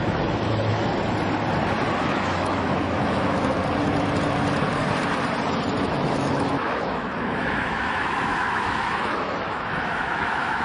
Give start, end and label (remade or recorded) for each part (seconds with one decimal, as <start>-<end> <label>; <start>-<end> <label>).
0.0-0.9 remade; 0.9-2.0 recorded; 2.0-3.6 remade; 3.6-5.8 recorded; 5.8-10.6 remade

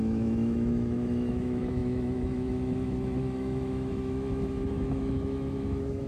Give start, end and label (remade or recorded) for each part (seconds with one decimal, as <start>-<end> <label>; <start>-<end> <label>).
0.0-6.1 remade

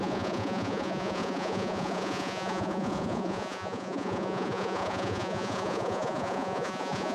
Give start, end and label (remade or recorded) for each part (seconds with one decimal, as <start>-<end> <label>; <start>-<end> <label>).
0.0-7.1 remade